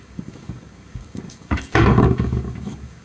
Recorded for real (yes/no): no